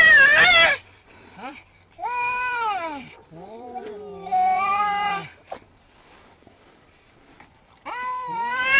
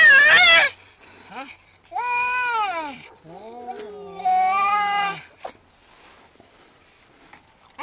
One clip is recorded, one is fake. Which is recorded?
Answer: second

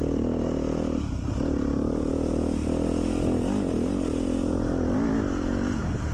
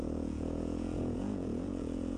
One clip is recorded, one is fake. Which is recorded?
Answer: first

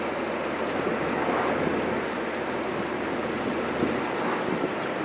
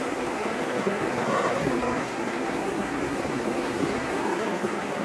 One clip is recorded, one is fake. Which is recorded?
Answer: first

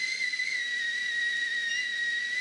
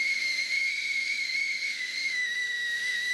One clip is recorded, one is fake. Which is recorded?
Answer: first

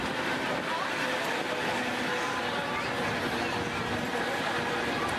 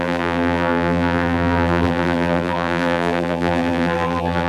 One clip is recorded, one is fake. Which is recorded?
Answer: first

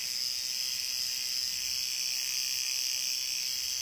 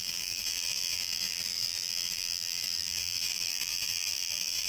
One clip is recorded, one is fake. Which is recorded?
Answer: first